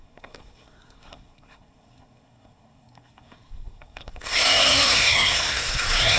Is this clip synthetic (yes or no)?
yes